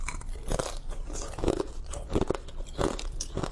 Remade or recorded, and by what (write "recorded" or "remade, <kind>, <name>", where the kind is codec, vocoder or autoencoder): recorded